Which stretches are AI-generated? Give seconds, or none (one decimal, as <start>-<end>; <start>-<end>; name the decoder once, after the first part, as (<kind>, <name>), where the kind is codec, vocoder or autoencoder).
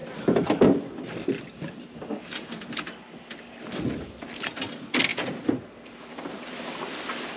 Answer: none